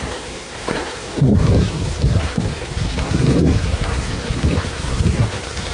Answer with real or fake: fake